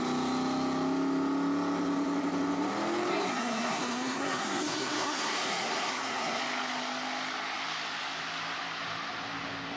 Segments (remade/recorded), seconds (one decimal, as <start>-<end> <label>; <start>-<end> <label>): 0.0-3.1 recorded; 3.1-6.4 remade; 6.4-9.8 recorded